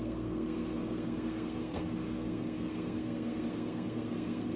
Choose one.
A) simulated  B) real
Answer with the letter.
A